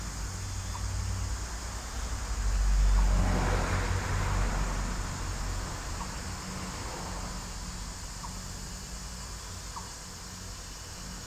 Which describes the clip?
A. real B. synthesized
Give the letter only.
A